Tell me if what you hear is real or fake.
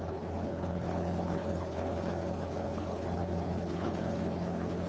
fake